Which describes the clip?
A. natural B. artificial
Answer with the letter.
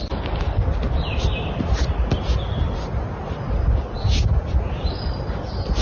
A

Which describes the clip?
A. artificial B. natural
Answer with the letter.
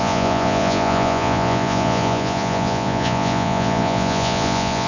A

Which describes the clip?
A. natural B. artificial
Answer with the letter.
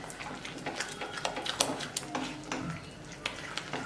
A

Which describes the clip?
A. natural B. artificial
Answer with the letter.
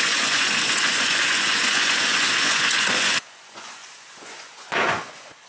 B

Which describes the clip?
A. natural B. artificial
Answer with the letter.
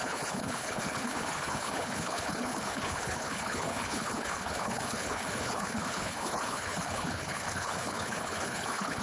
B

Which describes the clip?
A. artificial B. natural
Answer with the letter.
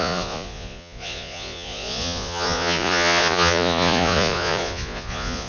A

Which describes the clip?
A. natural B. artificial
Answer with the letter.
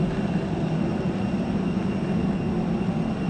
A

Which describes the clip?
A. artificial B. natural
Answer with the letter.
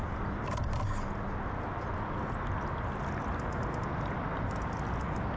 B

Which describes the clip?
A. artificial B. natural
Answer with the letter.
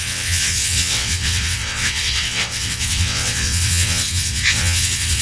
A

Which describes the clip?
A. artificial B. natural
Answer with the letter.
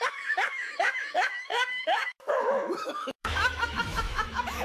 A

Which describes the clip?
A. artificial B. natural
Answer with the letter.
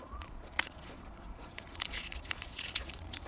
A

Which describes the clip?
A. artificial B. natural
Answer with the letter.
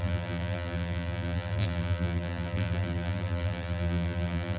A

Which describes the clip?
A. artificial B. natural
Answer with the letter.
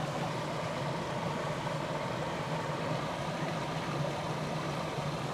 B